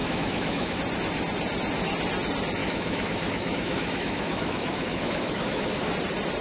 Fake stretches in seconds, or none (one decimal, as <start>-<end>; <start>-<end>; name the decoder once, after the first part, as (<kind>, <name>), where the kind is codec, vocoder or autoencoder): 0.0-0.8 (autoencoder, DAC-VAE); 2.6-5.9